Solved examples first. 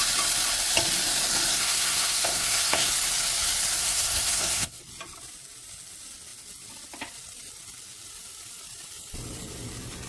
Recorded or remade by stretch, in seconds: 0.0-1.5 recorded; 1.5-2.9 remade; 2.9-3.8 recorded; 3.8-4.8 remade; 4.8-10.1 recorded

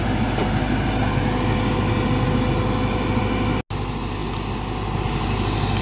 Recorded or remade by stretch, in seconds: 0.0-5.8 recorded

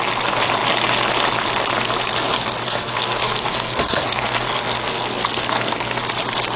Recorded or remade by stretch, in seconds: 0.0-2.6 recorded; 2.6-6.0 remade; 6.0-6.6 recorded

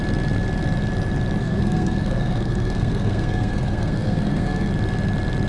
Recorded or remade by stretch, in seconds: 0.0-1.4 recorded; 1.4-4.7 remade; 4.7-5.5 recorded

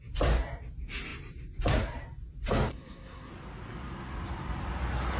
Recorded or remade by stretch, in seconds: 0.0-2.7 recorded; 2.7-3.3 remade; 3.3-5.2 recorded